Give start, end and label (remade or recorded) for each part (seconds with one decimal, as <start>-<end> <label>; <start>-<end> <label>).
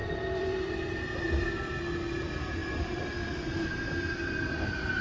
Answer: 0.0-1.8 remade; 1.8-2.6 recorded; 2.6-3.9 remade; 3.9-5.0 recorded